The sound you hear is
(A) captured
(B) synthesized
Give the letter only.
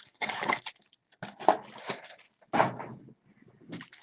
A